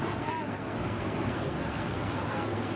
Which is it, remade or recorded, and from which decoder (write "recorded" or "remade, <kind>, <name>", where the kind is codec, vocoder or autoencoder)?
remade, codec, SNAC